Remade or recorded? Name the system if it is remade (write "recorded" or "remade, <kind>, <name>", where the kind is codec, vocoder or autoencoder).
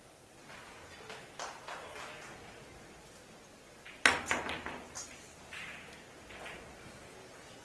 recorded